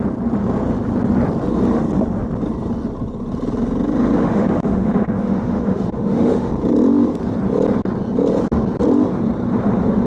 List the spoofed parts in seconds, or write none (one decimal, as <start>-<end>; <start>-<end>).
4.2-6.5